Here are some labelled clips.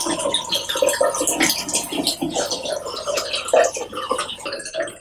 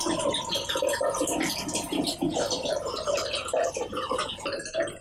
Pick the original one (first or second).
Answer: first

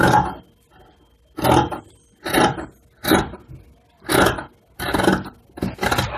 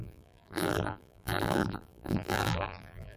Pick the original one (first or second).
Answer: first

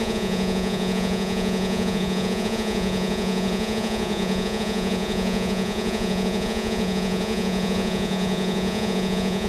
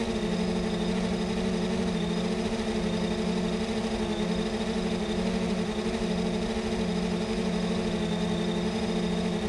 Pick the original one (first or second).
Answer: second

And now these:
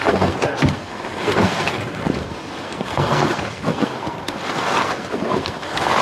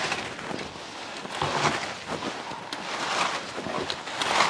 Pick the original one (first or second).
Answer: second